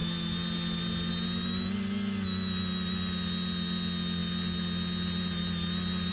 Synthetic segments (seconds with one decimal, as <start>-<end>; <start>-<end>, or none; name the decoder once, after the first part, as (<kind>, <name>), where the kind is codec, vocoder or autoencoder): none